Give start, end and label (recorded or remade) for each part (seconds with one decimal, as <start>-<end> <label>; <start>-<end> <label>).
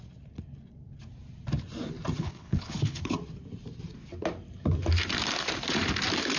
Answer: 0.0-2.2 recorded; 2.2-3.1 remade; 3.1-6.4 recorded